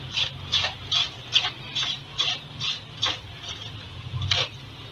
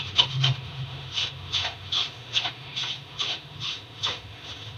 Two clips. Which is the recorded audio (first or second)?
first